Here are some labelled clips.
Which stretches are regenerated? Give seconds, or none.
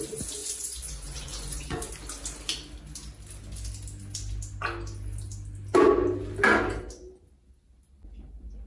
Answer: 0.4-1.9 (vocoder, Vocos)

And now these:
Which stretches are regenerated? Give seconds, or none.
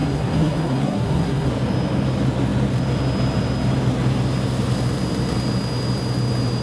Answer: 0.0-1.5 (codec, SNAC)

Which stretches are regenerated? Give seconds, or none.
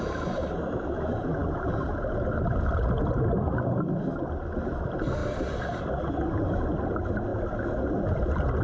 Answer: 5.2-6.0 (vocoder, BigVGAN v2)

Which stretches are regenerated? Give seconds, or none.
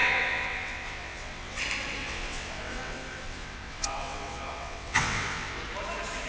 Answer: 0.0-1.6 (vocoder, WaveNeXt); 2.0-5.6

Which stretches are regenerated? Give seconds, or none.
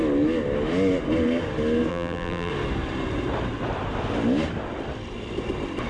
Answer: 1.9-2.5 (vocoder, BigVGAN v2)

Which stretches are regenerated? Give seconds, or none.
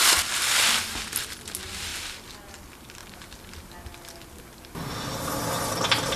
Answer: none